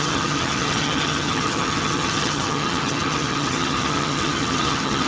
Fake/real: fake